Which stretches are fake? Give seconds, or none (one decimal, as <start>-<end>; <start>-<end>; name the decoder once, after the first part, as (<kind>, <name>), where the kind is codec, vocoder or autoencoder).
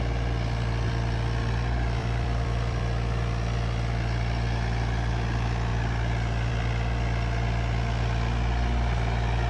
2.0-2.8 (vocoder, BigVGAN v2); 5.7-6.5